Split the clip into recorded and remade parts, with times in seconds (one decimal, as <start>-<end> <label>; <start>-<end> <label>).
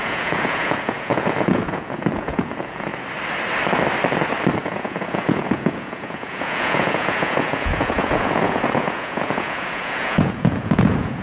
0.0-2.9 remade; 2.9-4.6 recorded; 4.6-11.2 remade